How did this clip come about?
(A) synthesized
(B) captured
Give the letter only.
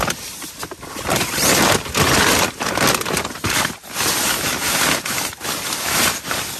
B